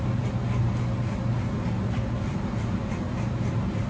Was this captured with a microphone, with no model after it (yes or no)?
yes